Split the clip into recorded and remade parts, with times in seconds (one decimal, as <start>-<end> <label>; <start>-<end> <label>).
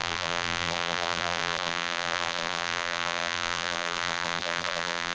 0.0-5.1 remade